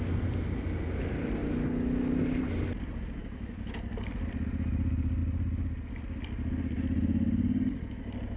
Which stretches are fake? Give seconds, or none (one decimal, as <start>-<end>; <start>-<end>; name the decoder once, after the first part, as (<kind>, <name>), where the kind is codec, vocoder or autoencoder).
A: none